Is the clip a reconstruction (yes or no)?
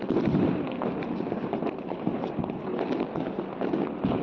no